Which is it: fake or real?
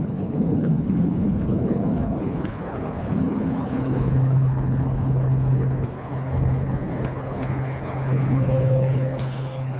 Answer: fake